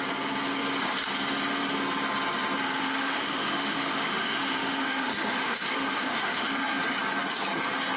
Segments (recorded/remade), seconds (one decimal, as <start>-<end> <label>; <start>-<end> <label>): 0.0-2.8 recorded; 2.8-6.8 remade; 6.8-8.0 recorded